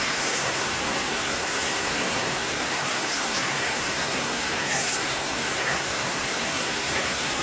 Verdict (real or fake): fake